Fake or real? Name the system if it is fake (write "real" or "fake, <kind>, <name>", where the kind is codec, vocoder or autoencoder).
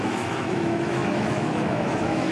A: fake, autoencoder, DAC-VAE